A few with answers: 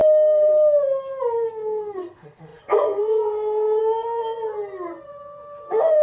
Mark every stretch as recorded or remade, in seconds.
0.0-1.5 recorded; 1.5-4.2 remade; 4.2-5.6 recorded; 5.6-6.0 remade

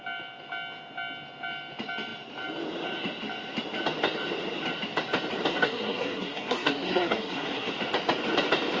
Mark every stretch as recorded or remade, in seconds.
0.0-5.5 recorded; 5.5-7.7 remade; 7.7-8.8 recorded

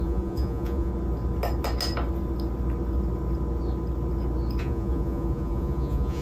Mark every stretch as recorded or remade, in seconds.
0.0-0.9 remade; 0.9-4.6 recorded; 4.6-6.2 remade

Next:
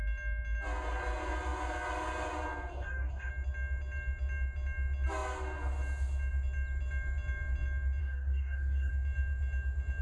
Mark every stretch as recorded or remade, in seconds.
0.0-2.7 recorded; 2.7-3.3 remade; 3.3-8.0 recorded; 8.0-8.9 remade; 8.9-10.0 recorded

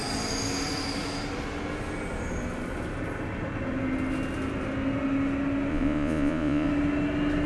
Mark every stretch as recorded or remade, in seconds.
0.0-5.7 recorded; 5.7-6.7 remade; 6.7-7.5 recorded

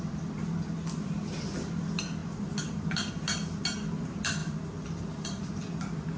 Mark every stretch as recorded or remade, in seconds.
0.0-6.2 recorded

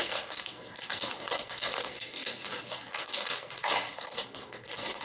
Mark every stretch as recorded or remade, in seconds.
0.0-5.0 remade